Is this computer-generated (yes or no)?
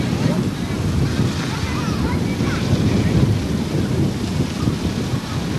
no